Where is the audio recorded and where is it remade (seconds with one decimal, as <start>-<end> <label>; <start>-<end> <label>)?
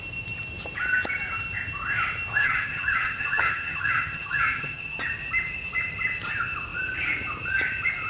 0.0-2.4 recorded; 2.4-5.0 remade; 5.0-8.1 recorded